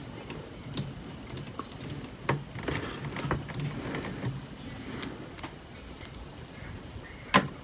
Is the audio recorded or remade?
recorded